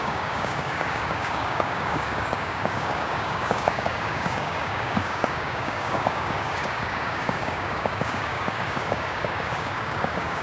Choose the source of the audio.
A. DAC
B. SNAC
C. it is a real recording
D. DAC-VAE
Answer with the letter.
A